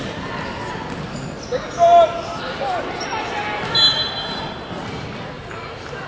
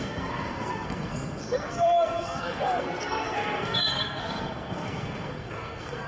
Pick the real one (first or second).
first